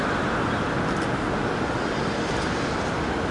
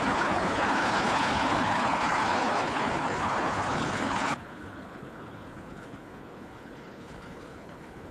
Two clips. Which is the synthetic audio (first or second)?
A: second